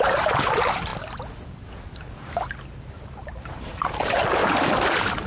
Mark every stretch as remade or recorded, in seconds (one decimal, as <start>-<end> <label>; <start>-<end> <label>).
0.0-0.9 remade; 0.9-2.7 recorded; 2.7-4.4 remade; 4.4-5.3 recorded